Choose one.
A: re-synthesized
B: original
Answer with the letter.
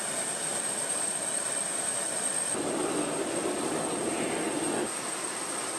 B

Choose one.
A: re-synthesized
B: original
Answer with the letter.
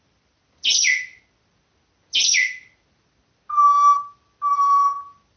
B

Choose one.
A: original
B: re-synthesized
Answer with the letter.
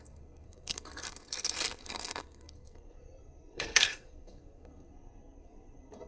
B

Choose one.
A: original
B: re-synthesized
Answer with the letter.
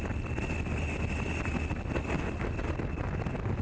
A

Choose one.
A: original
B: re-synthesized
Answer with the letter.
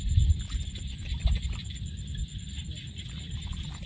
A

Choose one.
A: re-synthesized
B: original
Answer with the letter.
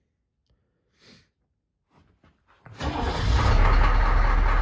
B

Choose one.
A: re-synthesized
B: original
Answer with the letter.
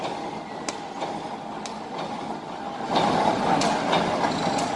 B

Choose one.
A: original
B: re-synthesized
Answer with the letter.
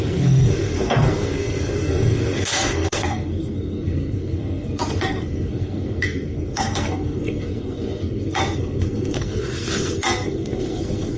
B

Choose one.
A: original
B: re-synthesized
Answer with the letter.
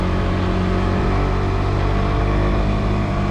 A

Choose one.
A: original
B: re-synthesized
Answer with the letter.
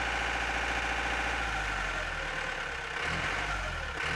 A